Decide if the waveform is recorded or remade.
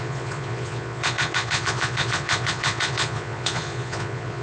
remade